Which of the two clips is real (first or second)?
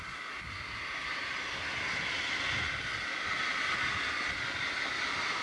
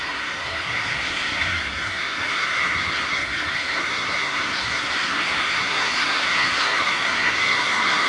first